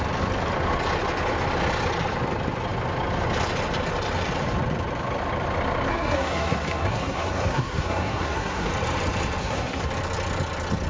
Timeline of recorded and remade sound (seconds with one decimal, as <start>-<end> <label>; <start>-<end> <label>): 0.0-5.9 recorded; 5.9-8.7 remade; 8.7-9.4 recorded; 9.4-9.9 remade; 9.9-10.9 recorded

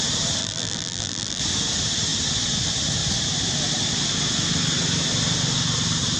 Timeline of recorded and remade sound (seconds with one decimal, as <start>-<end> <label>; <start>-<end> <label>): 0.0-0.4 recorded; 0.4-1.4 remade; 1.4-6.2 recorded

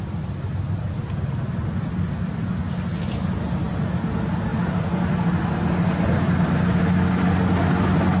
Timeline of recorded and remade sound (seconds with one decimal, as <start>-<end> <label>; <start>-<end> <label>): 0.0-8.2 recorded

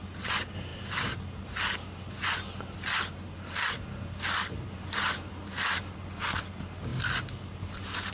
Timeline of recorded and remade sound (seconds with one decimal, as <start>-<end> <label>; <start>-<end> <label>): 0.0-8.1 recorded

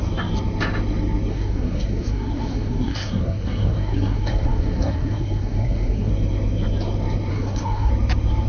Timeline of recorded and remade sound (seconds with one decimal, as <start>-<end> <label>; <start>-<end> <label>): 0.0-1.3 recorded; 1.3-6.1 remade; 6.1-7.3 recorded; 7.3-7.9 remade; 7.9-8.5 recorded

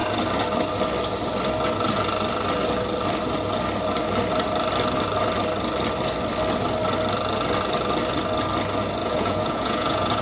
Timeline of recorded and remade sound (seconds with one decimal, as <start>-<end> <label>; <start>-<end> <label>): 0.0-9.0 recorded; 9.0-10.2 remade

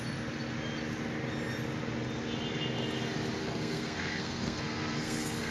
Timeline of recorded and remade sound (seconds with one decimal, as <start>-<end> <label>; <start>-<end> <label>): 0.0-3.4 recorded; 3.4-5.5 remade